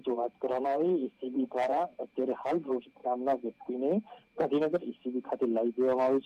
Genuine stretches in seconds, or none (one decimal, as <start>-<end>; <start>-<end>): 3.0-6.3